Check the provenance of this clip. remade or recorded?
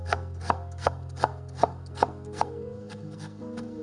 remade